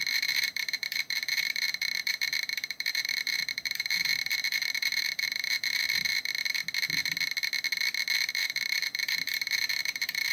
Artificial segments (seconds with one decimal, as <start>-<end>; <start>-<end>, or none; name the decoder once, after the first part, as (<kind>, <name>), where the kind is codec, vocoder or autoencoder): 0.0-6.3 (vocoder, BigVGAN v2); 8.3-10.3